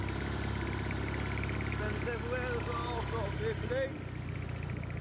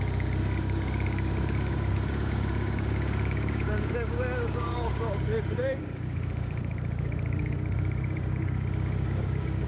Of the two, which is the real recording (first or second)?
first